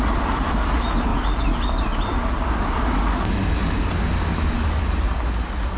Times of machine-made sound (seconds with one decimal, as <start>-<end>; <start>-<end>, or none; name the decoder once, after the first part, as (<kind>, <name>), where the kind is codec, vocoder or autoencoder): none